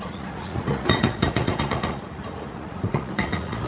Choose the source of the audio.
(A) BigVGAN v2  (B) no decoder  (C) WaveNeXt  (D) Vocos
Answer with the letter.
D